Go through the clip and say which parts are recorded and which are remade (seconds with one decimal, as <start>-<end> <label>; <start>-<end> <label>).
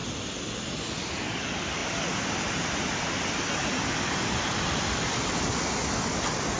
0.0-6.6 recorded